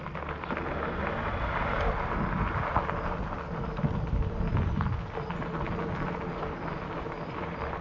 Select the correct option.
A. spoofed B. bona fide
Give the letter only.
B